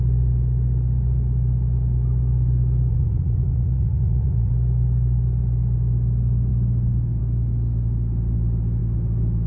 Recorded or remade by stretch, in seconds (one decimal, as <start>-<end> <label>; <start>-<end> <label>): 0.0-2.9 recorded; 2.9-4.5 remade; 4.5-9.5 recorded